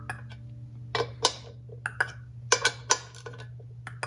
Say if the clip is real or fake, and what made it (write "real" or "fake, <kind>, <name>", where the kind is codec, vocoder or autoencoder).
real